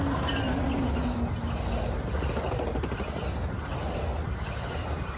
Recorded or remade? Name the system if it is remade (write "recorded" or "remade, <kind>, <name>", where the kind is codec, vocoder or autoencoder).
recorded